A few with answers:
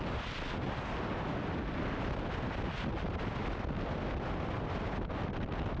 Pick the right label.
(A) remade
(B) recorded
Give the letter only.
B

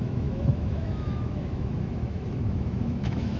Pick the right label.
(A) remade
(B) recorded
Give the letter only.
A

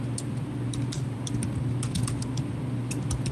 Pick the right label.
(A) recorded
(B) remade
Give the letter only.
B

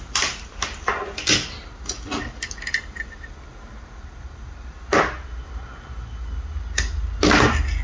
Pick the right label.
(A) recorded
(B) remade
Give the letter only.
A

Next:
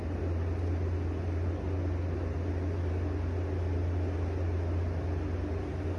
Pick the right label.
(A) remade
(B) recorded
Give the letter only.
B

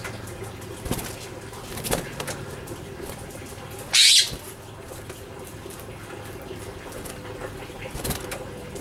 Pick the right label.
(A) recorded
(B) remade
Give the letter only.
A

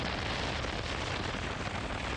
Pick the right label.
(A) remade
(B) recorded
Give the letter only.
B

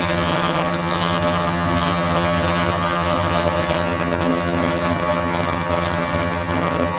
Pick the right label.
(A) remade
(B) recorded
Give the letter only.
A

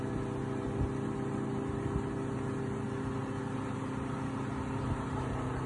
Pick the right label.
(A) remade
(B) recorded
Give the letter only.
B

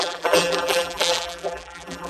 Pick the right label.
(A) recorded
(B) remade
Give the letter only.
B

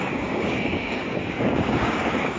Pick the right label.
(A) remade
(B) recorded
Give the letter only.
A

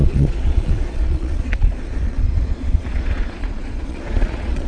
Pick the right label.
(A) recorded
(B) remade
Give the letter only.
B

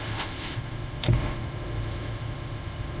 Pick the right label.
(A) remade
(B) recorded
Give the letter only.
A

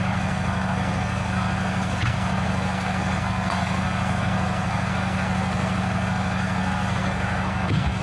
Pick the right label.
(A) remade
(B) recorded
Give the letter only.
A